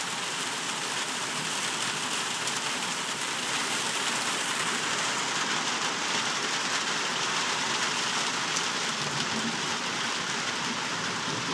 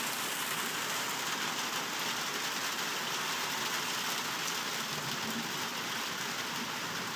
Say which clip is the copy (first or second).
first